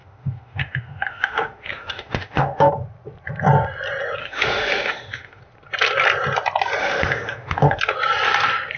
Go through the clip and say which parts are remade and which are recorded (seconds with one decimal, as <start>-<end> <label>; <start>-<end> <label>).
0.0-2.7 remade; 2.7-4.2 recorded; 4.2-5.4 remade; 5.4-6.8 recorded; 6.8-7.8 remade; 7.8-8.8 recorded